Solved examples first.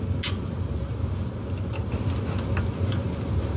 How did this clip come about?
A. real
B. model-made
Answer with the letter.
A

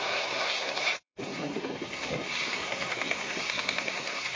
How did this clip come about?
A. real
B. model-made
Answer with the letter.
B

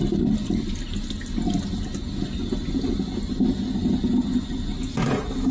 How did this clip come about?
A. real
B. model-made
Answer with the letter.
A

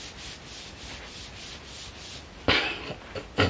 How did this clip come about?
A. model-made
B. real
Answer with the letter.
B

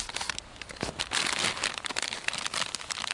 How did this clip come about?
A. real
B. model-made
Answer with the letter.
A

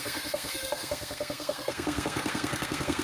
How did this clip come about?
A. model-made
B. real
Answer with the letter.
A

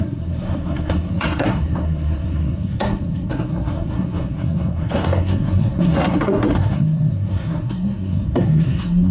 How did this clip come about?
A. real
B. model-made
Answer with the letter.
B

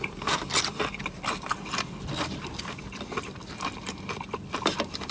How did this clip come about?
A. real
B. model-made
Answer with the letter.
B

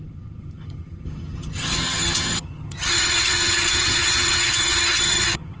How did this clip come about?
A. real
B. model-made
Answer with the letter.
B